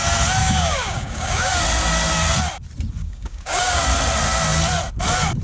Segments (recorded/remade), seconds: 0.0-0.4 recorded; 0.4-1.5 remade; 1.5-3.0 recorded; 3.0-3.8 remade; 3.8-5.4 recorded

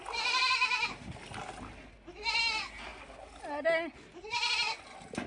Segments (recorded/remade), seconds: 0.0-5.3 recorded

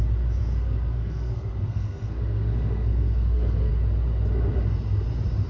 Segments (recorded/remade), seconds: 0.0-0.4 recorded; 0.4-3.7 remade; 3.7-5.5 recorded

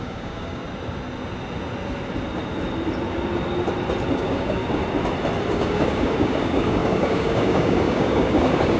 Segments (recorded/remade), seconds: 0.0-0.6 remade; 0.6-4.1 recorded; 4.1-4.8 remade; 4.8-5.5 recorded; 5.5-8.8 remade